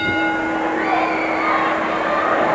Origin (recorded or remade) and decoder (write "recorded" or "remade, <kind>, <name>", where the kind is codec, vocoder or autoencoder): recorded